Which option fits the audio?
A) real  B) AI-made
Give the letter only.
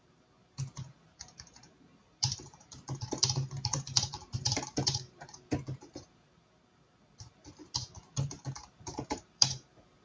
B